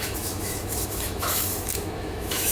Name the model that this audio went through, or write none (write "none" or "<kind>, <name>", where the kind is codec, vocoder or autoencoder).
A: autoencoder, DAC-VAE